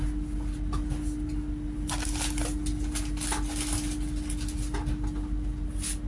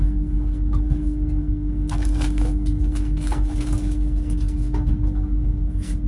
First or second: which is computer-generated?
second